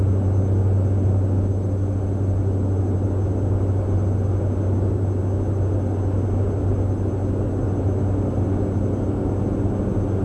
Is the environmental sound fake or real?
real